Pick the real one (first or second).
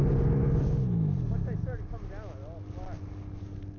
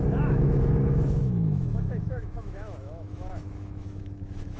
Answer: first